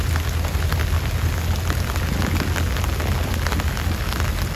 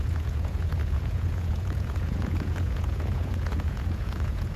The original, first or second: first